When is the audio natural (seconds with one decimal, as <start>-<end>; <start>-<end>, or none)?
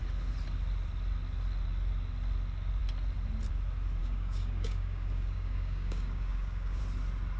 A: 0.0-4.0; 6.8-7.4